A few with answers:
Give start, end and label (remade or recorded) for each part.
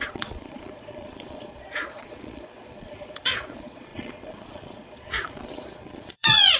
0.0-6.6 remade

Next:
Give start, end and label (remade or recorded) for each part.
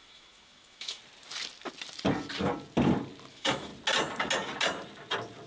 0.0-1.0 remade; 1.0-3.3 recorded; 3.3-3.7 remade; 3.7-5.5 recorded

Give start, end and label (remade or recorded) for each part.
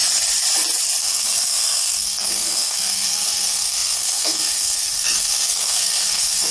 0.0-1.0 recorded; 1.0-6.5 remade